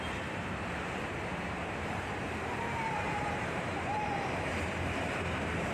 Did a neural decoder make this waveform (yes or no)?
yes